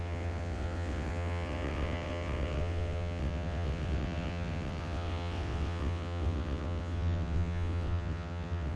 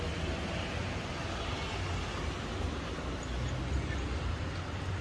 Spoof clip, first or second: first